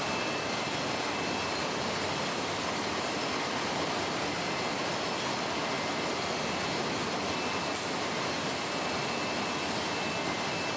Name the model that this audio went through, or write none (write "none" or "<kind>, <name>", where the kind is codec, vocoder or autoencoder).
none